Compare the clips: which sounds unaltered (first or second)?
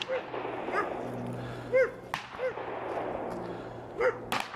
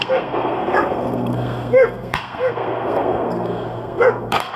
first